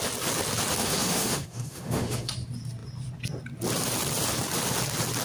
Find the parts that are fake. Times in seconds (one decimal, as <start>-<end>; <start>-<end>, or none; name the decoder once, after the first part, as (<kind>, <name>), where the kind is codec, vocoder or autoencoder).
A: 0.8-2.3 (autoencoder, DAC-VAE)